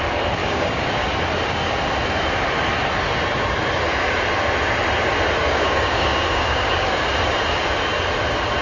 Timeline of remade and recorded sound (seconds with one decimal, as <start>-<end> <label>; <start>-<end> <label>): 0.0-0.4 recorded; 0.4-1.1 remade; 1.1-5.4 recorded; 5.4-7.1 remade; 7.1-8.6 recorded